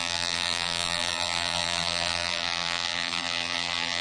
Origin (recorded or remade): remade